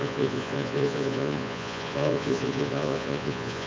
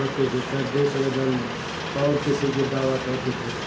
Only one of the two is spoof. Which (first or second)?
first